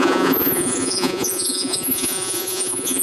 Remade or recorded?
remade